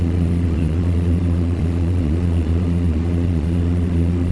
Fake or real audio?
fake